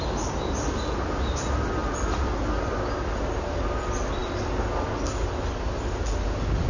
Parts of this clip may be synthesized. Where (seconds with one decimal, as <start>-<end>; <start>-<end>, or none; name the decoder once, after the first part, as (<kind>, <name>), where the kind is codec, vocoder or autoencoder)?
none